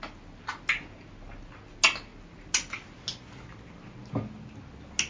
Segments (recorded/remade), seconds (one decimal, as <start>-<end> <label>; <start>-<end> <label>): 0.0-5.1 recorded